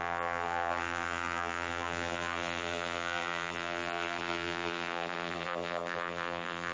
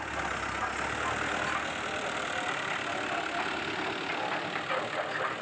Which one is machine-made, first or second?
first